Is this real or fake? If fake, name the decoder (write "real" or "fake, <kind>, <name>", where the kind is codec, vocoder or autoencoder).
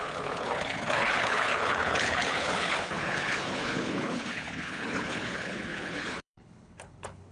fake, codec, HILCodec